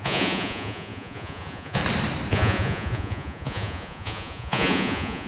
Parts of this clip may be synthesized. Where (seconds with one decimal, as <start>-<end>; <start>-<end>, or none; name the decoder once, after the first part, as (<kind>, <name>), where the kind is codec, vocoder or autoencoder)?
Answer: 0.0-1.8 (vocoder, Vocos); 2.3-5.3